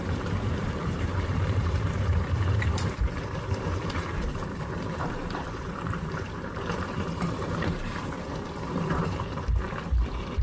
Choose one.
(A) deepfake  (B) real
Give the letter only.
A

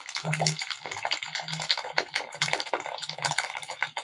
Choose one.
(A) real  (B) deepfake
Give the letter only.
B